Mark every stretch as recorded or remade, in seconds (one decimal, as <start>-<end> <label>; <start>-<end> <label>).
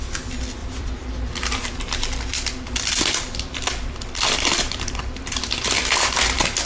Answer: 0.0-0.6 recorded; 0.6-1.9 remade; 1.9-2.3 recorded; 2.3-5.7 remade; 5.7-6.7 recorded